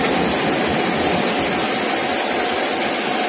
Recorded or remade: recorded